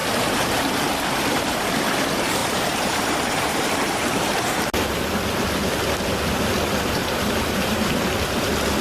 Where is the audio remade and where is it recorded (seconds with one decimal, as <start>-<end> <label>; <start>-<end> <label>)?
0.0-2.4 recorded; 2.4-4.7 remade; 4.7-7.0 recorded; 7.0-8.0 remade; 8.0-8.8 recorded